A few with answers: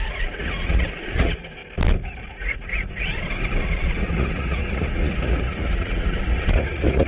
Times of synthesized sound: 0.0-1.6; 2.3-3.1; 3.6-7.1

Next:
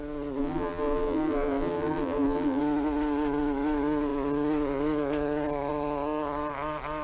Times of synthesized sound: 0.4-2.6

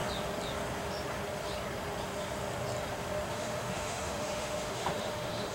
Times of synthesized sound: 3.3-5.5

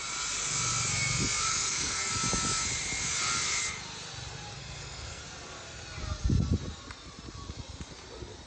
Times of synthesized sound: 1.5-2.1; 4.6-5.2

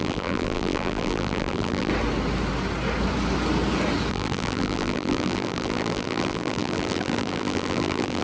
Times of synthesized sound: 0.0-1.9; 4.1-8.2

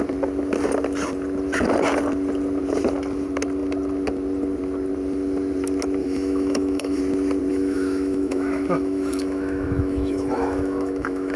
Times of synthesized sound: 6.0-7.0; 7.5-11.4

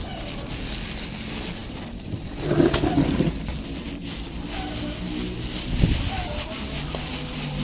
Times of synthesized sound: none

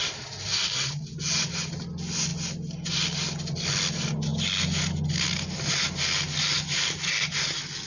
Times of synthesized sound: none